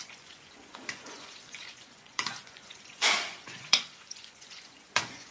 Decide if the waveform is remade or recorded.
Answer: remade